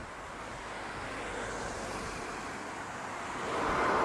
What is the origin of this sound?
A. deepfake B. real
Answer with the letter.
B